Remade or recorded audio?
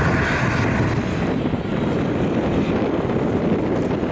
recorded